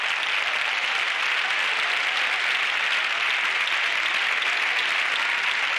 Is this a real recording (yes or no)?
yes